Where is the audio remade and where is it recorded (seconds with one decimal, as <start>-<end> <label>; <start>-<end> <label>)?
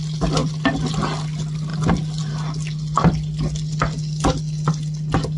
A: 0.0-5.4 recorded